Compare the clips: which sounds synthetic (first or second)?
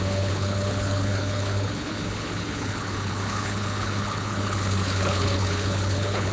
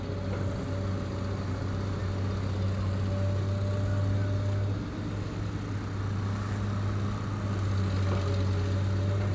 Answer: first